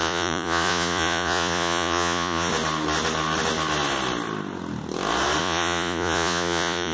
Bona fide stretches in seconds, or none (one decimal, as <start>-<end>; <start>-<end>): 2.5-5.4